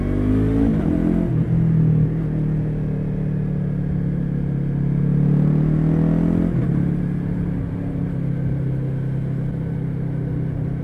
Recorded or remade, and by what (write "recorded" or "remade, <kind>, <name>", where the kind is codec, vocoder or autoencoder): recorded